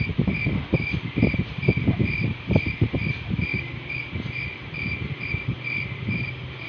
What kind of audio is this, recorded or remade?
remade